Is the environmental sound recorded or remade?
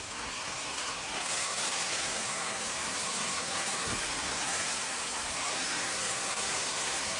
remade